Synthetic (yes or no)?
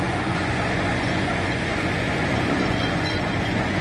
yes